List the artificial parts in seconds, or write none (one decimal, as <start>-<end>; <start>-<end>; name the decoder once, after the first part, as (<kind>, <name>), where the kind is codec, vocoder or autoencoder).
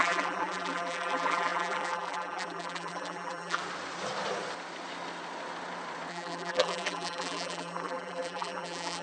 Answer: 0.0-3.6 (vocoder, BigVGAN v2); 6.1-9.0